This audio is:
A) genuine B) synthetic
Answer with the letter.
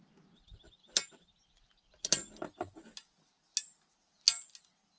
A